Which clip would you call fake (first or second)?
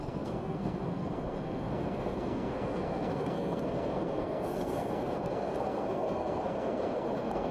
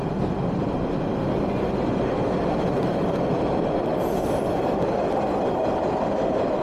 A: first